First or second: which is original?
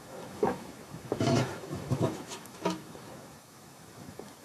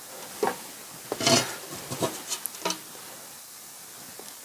second